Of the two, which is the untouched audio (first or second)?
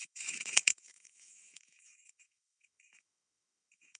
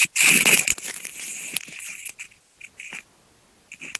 second